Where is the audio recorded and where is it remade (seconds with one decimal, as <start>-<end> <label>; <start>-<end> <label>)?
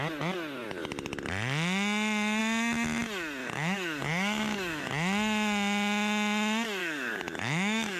0.0-3.4 recorded; 3.4-4.9 remade; 4.9-6.8 recorded; 6.8-8.0 remade